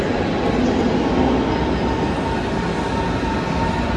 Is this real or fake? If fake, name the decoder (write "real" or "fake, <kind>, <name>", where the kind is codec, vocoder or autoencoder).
real